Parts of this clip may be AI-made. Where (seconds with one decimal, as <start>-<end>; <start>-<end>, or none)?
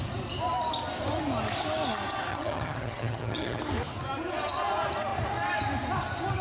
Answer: 2.3-3.6